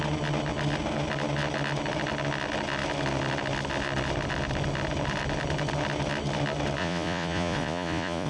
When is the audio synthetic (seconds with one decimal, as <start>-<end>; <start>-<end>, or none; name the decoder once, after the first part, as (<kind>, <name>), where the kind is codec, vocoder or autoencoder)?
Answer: 6.8-8.3 (vocoder, Vocos)